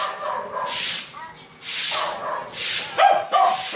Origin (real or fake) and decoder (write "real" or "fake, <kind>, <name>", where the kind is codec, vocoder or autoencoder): real